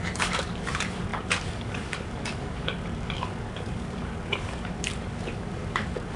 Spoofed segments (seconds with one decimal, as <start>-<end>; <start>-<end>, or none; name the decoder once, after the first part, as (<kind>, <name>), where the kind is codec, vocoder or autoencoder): 0.0-6.2 (codec, DAC)